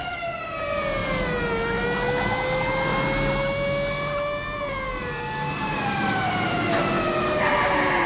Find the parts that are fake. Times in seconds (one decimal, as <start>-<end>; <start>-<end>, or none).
none